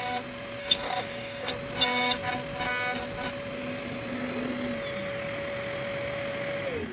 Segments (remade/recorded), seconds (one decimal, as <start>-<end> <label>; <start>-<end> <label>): 0.0-0.6 recorded; 0.6-1.5 remade; 1.5-6.9 recorded